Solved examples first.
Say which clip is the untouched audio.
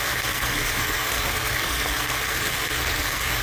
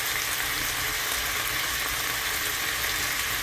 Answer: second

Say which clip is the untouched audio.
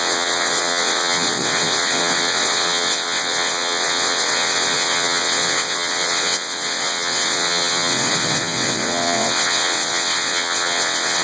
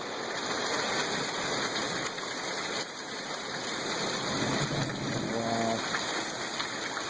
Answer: second